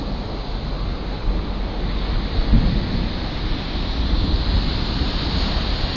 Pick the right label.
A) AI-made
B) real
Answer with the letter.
B